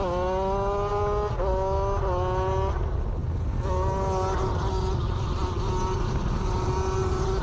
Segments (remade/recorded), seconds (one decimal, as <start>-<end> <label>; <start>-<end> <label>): 0.0-7.4 recorded